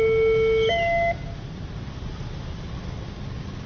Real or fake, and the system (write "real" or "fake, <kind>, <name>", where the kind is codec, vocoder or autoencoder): real